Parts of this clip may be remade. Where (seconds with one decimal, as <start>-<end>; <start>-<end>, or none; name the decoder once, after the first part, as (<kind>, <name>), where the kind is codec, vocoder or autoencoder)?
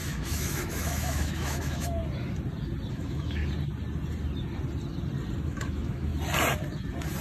0.0-2.0 (autoencoder, DAC-VAE); 2.9-3.4; 5.4-6.1